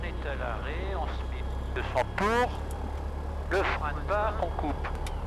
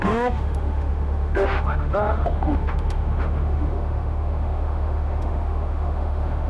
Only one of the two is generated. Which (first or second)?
second